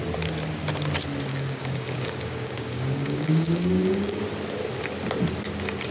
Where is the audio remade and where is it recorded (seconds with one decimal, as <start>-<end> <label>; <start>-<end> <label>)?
0.0-1.3 recorded; 1.3-4.2 remade; 4.2-5.9 recorded